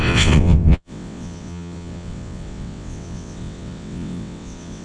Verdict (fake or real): fake